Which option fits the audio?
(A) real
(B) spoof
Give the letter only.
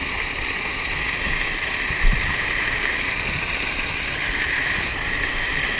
A